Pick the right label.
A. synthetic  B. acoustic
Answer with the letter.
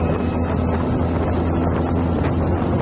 B